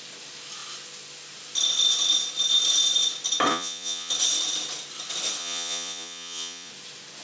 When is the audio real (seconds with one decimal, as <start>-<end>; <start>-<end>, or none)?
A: 0.0-3.5; 4.1-5.4; 6.7-7.2

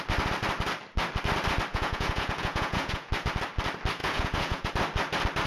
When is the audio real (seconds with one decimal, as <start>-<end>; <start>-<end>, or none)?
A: 0.0-1.7; 3.1-4.0; 4.7-5.5

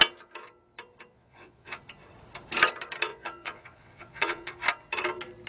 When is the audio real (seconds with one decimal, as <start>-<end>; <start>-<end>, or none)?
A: 0.0-1.1; 1.8-3.1; 4.5-5.5